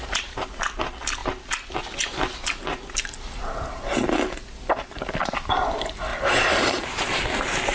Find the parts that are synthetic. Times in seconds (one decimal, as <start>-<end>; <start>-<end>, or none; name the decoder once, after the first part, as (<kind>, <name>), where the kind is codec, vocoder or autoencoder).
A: 0.0-0.6 (vocoder, BigVGAN v2); 6.1-7.0